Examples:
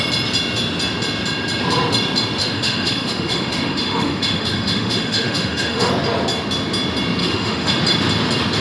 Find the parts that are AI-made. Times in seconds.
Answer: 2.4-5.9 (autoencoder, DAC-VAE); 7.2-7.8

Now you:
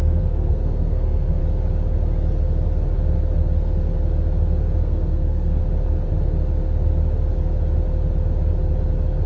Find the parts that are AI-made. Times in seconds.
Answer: 0.0-1.4 (codec, SNAC); 4.8-5.6

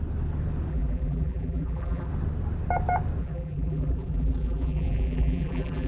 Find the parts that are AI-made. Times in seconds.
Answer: 0.7-2.1 (vocoder, BigVGAN v2); 3.2-5.9

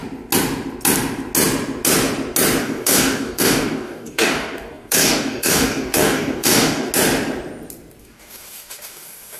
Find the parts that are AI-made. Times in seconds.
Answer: 2.6-6.9 (codec, DAC); 8.0-9.4